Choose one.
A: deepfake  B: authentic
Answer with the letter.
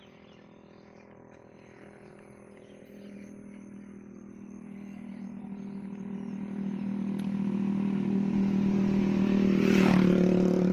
B